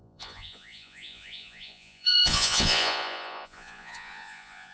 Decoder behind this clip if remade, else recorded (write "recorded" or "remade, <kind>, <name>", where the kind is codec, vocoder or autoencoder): remade, vocoder, Vocos